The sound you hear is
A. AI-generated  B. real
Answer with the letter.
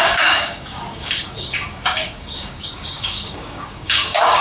A